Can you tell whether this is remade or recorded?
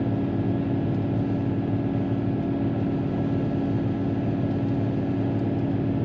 recorded